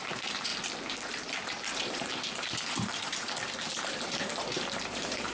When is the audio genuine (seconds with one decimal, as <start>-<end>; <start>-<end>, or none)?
0.5-1.4